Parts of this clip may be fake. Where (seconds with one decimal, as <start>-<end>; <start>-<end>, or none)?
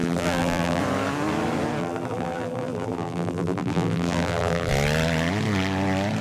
0.0-0.8; 1.8-4.7